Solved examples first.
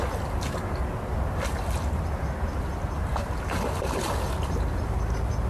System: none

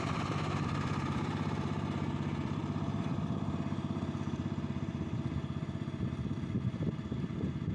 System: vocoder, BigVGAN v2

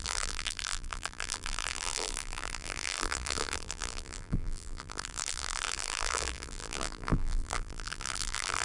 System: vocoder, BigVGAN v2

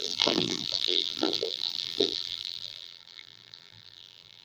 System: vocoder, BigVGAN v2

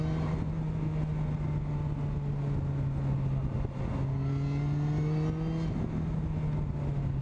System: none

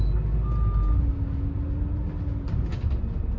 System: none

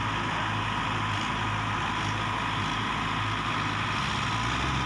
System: none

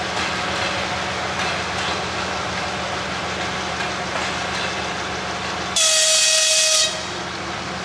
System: none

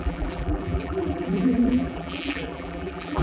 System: vocoder, BigVGAN v2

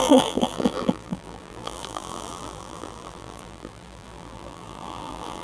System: vocoder, BigVGAN v2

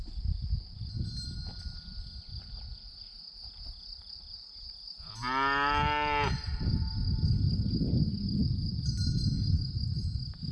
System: none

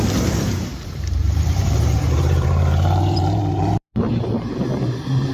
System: vocoder, BigVGAN v2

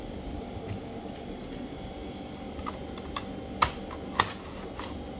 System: none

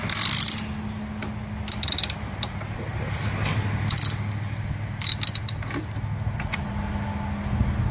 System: none